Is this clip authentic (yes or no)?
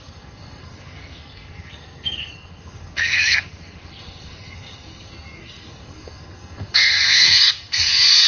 no